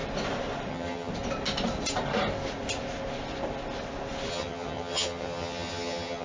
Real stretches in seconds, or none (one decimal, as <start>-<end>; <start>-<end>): 0.0-0.7; 1.1-4.3